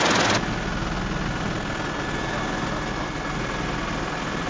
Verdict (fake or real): real